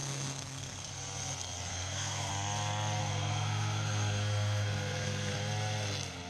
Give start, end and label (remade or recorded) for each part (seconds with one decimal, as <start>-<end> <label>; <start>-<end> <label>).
0.0-0.9 remade; 0.9-1.7 recorded; 1.7-2.3 remade; 2.3-3.0 recorded; 3.0-5.3 remade; 5.3-6.3 recorded